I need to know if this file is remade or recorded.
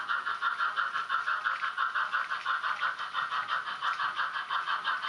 recorded